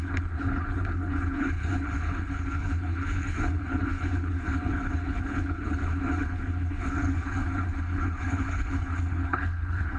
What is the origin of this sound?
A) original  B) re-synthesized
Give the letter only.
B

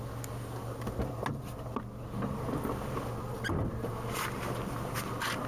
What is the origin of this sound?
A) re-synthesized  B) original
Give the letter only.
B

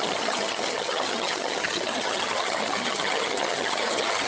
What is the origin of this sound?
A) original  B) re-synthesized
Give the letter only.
B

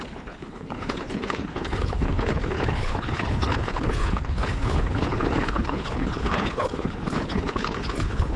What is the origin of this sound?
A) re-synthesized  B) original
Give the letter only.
A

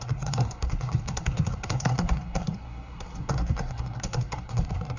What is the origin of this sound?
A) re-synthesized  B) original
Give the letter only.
A